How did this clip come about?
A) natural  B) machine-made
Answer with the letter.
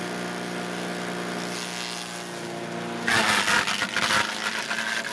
A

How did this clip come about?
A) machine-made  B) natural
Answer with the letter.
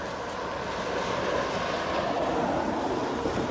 B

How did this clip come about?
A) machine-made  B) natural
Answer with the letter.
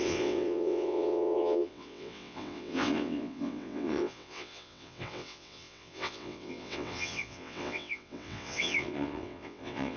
A